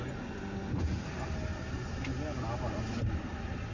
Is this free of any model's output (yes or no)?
yes